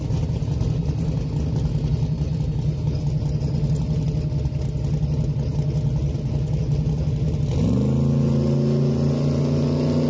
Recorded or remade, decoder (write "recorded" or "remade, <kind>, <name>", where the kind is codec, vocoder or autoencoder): recorded